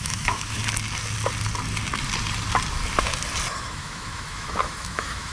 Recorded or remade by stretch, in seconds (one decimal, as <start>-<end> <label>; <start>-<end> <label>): 0.0-0.6 remade; 0.6-3.6 recorded; 3.6-5.3 remade